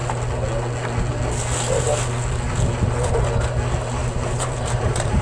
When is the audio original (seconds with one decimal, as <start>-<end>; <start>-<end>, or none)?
0.0-4.0